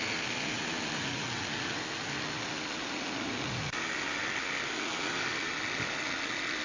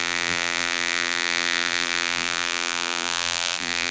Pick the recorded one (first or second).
first